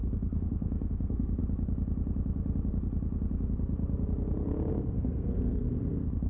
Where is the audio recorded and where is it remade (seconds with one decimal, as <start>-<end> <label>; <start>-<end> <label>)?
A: 0.0-1.4 remade; 1.4-4.7 recorded; 4.7-6.3 remade